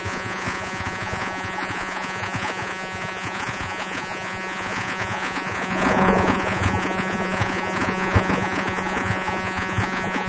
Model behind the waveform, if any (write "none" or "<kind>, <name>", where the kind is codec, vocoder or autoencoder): vocoder, Vocos